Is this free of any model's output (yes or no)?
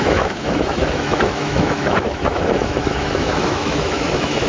no